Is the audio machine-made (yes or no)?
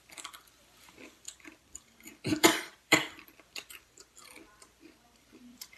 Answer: yes